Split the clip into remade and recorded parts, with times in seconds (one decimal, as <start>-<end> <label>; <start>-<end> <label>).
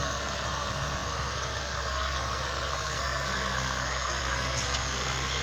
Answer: 0.0-5.4 remade